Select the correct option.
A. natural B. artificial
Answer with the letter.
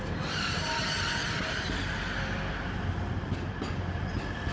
A